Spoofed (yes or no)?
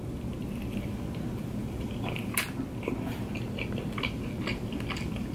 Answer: no